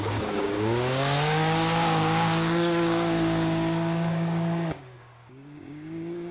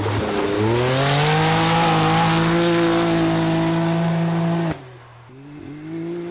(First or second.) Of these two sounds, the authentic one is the second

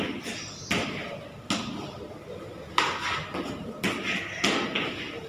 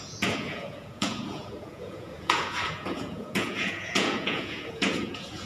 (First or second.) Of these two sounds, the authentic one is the first